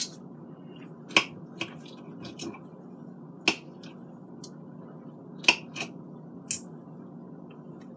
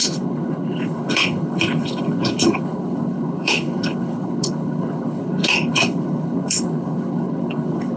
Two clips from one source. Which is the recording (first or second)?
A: first